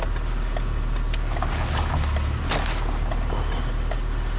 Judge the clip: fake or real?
real